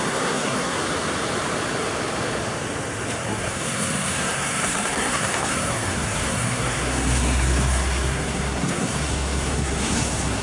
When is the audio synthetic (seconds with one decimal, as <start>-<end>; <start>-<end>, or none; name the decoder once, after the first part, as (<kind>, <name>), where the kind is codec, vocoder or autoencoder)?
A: 0.0-0.8 (codec, SNAC); 3.2-10.4